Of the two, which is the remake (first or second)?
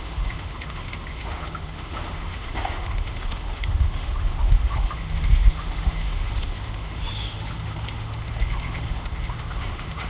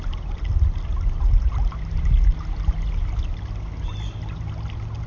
first